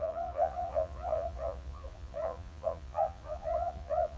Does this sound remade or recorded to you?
remade